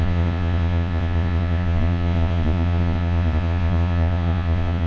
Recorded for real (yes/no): no